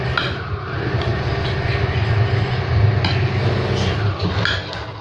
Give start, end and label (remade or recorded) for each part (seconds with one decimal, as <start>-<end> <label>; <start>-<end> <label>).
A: 0.0-5.0 recorded

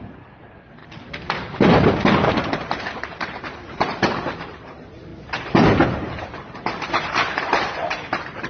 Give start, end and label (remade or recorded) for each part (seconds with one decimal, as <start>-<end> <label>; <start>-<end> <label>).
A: 0.0-8.5 remade

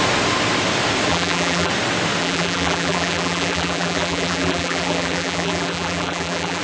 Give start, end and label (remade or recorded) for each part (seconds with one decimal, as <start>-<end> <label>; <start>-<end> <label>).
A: 0.0-1.1 recorded; 1.1-1.7 remade; 1.7-2.2 recorded; 2.2-6.6 remade

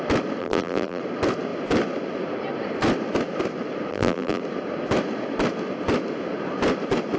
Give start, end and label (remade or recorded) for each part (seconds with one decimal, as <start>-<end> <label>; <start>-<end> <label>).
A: 0.0-0.4 recorded; 0.4-1.0 remade; 1.0-3.9 recorded; 3.9-4.4 remade; 4.4-7.2 recorded